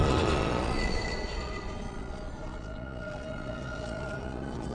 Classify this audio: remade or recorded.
remade